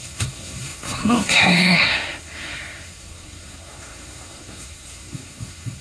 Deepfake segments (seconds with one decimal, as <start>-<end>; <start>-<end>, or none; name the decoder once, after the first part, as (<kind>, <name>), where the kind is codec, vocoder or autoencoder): 0.0-5.8 (codec, SNAC)